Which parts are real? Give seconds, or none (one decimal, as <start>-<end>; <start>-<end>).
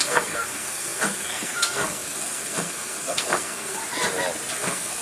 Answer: 3.8-4.5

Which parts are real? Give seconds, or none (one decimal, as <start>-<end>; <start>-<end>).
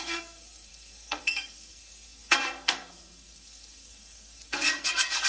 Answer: none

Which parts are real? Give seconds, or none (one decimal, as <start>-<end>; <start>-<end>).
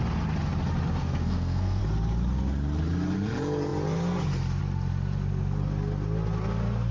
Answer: 0.0-1.0; 1.8-6.9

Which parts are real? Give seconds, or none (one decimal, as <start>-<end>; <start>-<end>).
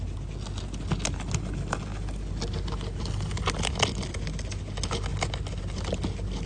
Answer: 0.0-6.5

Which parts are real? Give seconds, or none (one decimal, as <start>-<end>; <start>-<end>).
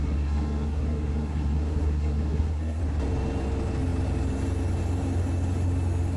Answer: 2.8-6.2